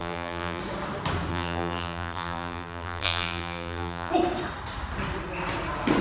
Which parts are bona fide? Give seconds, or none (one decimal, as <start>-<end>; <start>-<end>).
0.6-1.3; 4.1-6.0